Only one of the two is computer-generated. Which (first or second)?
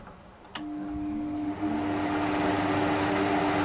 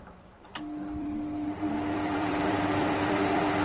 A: second